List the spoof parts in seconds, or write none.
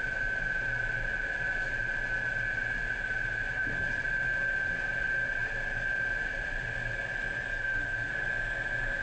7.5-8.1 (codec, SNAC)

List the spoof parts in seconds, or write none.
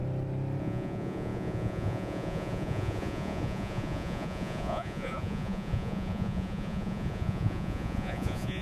0.6-8.6 (vocoder, Vocos)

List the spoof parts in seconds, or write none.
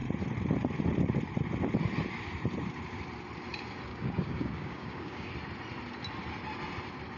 3.9-5.3 (codec, DAC)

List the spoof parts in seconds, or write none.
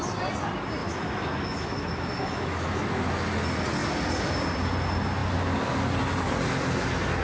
0.8-3.3 (autoencoder, DAC-VAE)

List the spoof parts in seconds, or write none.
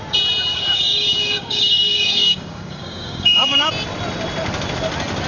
0.5-3.7 (codec, DAC)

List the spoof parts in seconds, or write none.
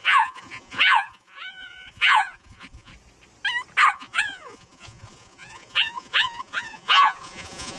0.0-2.9 (vocoder, Vocos); 3.9-7.8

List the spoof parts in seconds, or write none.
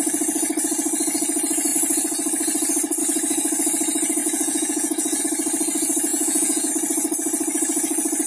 4.2-5.2 (vocoder, Vocos); 6.1-6.7